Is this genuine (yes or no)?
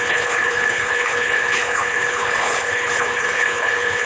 no